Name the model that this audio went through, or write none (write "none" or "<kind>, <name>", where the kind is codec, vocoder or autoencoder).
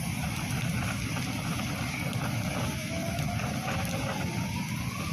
none